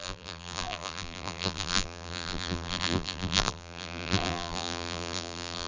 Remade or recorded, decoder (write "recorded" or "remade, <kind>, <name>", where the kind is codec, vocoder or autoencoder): remade, vocoder, BigVGAN v2